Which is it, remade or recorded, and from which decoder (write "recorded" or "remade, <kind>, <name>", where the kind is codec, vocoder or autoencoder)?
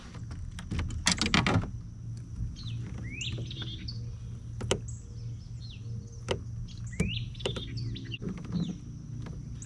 recorded